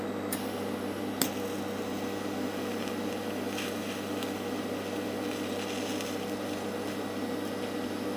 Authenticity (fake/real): real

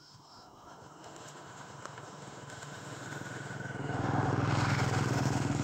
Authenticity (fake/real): fake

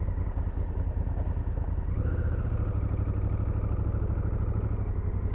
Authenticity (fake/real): real